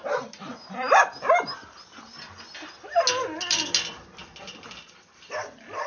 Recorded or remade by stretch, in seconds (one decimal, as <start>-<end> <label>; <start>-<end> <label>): 0.0-5.9 recorded